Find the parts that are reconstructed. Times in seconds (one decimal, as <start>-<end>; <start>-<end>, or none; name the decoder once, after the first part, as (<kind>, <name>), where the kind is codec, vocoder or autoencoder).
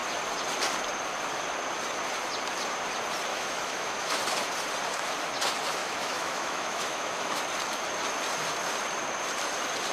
3.3-4.2 (autoencoder, DAC-VAE); 5.8-7.4